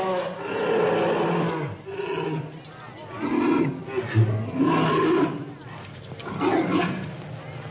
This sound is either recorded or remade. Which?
recorded